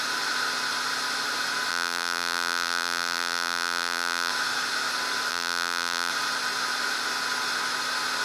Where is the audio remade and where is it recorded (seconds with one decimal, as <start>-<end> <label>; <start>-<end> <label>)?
0.0-1.7 recorded; 1.7-4.3 remade; 4.3-5.3 recorded; 5.3-6.1 remade; 6.1-8.2 recorded